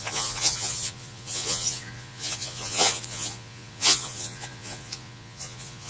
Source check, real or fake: fake